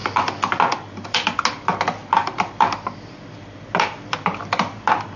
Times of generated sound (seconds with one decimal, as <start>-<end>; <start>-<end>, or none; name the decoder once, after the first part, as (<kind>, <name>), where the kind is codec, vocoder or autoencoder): 0.0-0.6 (vocoder, BigVGAN v2); 2.0-5.2